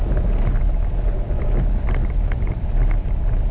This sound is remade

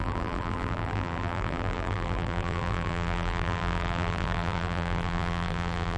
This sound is remade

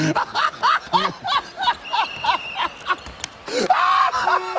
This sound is recorded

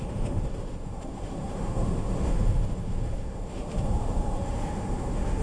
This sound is remade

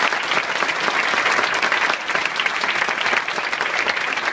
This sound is recorded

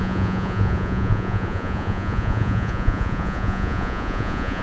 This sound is remade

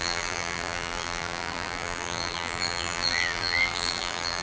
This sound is remade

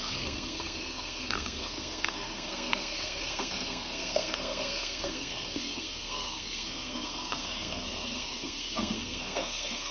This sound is remade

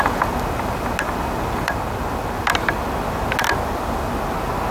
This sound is recorded